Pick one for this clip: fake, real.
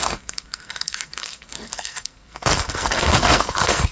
fake